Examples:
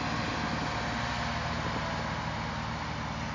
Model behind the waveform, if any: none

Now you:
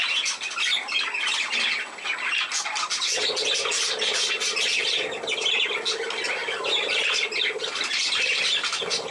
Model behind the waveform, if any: none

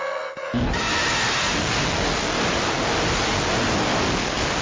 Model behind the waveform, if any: none